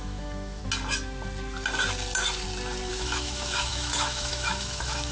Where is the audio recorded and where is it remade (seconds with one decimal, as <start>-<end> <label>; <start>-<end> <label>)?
0.0-0.6 remade; 0.6-2.9 recorded; 2.9-5.1 remade